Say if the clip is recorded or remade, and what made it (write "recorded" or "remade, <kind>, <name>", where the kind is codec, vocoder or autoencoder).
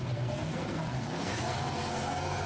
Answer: remade, codec, SNAC